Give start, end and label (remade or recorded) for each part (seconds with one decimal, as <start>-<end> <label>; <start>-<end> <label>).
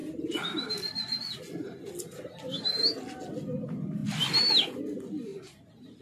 0.0-6.0 recorded